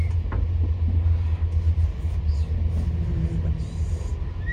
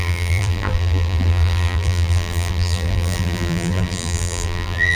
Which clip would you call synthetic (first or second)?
second